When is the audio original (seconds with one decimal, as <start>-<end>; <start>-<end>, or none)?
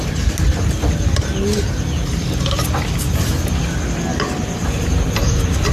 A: 0.0-4.6